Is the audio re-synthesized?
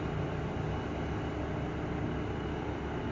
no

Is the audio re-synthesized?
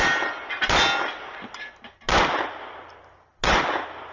no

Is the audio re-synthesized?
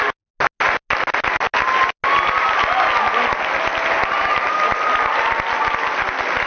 no